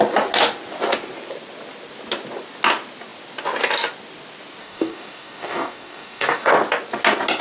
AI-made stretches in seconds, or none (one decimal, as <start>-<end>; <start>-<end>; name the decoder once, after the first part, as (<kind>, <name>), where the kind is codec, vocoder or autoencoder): 4.6-6.5 (codec, DAC)